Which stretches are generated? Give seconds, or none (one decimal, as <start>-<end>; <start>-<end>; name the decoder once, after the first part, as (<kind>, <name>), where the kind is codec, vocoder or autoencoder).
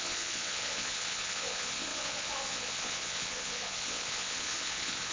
0.0-5.1 (vocoder, Vocos)